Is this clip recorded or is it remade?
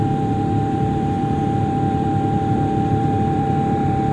remade